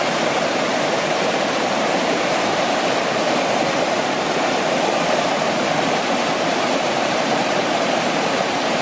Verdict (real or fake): fake